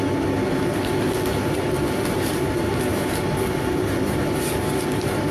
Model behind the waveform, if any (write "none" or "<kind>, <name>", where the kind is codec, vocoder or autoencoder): none